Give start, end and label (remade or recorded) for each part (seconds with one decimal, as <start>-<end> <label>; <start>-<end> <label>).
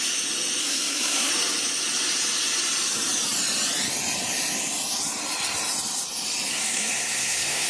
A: 0.0-0.6 recorded; 0.6-1.3 remade; 1.3-6.5 recorded; 6.5-7.7 remade